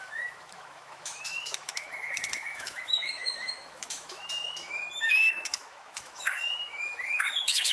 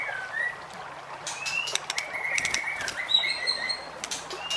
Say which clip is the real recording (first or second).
second